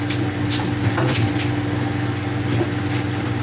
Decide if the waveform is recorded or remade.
recorded